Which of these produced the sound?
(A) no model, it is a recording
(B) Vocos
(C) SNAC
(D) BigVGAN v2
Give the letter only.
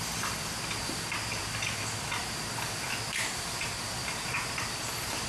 D